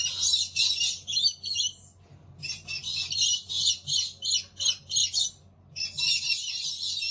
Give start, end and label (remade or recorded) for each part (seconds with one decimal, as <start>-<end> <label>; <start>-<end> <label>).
0.0-7.1 recorded